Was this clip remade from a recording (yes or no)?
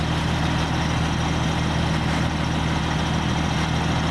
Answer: no